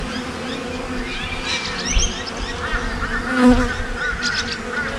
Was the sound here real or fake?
real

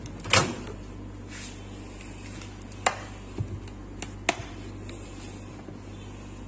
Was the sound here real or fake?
real